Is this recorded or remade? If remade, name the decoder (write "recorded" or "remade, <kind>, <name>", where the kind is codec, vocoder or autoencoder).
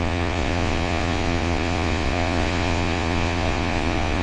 remade, vocoder, Vocos